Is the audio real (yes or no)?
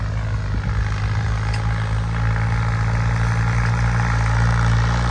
yes